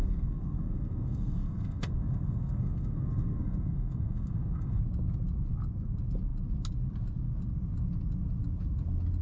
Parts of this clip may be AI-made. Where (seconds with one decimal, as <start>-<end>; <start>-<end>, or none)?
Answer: 0.0-4.8